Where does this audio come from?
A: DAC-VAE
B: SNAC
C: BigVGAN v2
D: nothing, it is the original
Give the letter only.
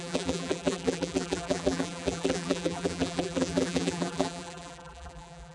C